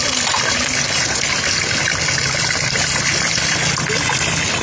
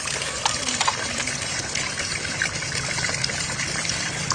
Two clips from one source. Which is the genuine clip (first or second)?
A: first